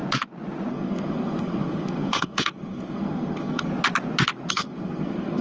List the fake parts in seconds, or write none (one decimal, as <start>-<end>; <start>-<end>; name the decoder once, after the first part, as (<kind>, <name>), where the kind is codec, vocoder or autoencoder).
0.7-3.7 (codec, SNAC); 4.5-5.4